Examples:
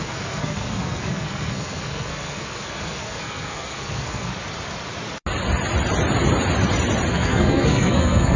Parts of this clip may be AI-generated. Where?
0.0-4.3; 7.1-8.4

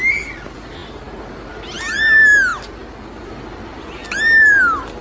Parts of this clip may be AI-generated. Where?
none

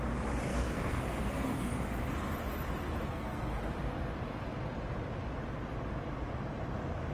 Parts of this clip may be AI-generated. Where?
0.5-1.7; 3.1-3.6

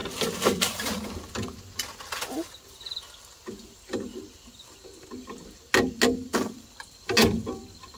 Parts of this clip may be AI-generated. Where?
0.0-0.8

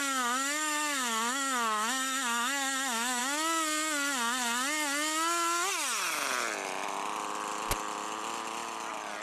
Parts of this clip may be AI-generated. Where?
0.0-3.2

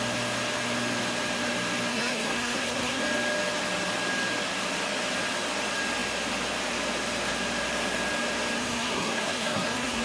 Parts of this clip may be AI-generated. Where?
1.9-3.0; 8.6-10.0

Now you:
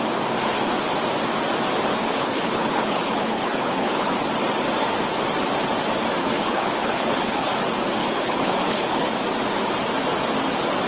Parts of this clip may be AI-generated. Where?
2.0-4.1; 6.2-7.5; 8.0-9.1